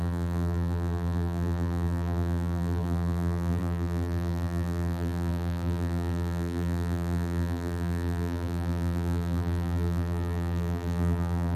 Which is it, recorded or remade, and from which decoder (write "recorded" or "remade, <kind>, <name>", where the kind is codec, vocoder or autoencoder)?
remade, vocoder, BigVGAN v2